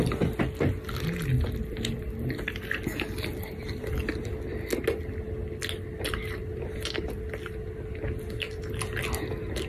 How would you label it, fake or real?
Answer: real